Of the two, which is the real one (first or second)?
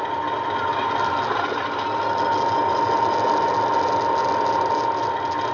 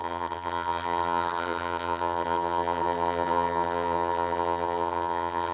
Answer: first